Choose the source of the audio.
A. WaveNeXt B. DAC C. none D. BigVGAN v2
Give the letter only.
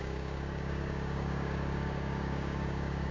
B